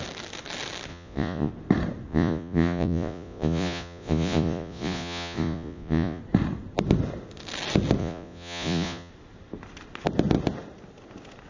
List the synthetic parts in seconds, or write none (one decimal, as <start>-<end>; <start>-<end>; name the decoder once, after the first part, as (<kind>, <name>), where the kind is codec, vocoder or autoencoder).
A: 0.9-1.5 (vocoder, Vocos); 2.1-6.2; 8.0-9.1